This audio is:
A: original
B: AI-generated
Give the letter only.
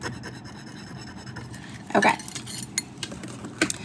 A